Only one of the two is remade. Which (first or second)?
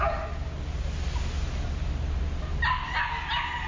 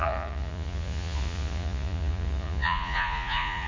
second